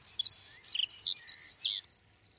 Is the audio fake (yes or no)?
no